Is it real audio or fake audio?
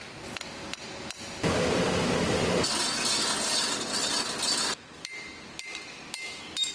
real